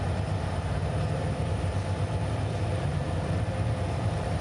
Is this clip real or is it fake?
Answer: fake